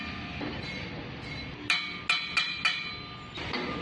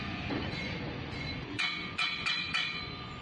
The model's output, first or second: second